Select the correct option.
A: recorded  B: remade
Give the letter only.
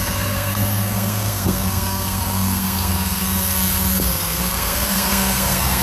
B